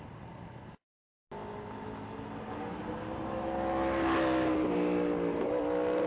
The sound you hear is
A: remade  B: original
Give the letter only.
B